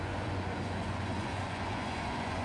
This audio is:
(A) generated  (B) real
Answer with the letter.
A